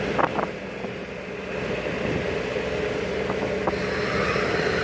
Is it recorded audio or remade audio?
recorded